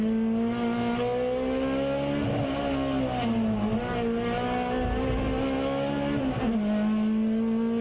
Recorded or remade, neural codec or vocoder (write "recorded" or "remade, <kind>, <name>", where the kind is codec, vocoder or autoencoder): recorded